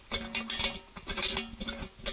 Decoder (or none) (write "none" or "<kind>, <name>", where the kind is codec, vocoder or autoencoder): none